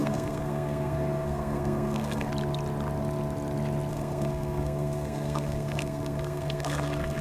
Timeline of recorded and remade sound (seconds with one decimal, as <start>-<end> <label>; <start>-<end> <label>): 0.0-2.3 remade; 2.3-3.9 recorded; 3.9-7.2 remade